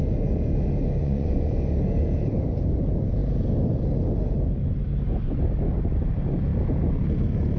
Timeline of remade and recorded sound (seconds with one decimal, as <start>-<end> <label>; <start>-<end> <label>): 0.0-1.0 recorded; 1.0-1.5 remade; 1.5-7.6 recorded